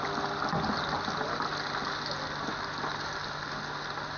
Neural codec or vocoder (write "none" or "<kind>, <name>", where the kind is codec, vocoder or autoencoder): none